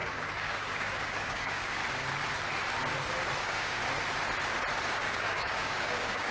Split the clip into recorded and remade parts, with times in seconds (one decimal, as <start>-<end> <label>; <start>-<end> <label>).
0.0-1.8 remade; 1.8-3.4 recorded; 3.4-3.8 remade; 3.8-4.9 recorded; 4.9-6.3 remade